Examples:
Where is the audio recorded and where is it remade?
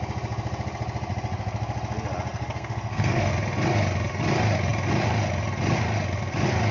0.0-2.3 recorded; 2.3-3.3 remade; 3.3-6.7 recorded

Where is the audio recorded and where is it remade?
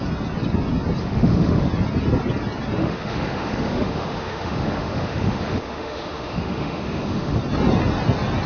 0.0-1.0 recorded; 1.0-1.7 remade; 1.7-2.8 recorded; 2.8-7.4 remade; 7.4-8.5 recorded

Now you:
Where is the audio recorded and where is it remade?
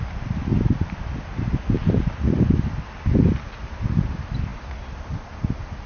0.0-5.9 recorded